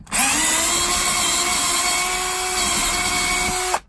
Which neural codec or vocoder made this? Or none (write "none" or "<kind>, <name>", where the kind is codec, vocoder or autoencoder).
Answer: none